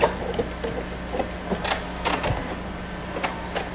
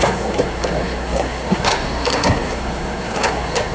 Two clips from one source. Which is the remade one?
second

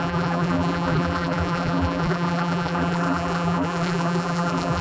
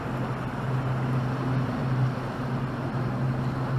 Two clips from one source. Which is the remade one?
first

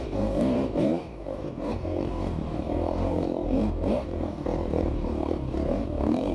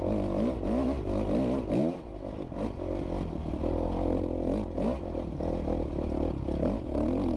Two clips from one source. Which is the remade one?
first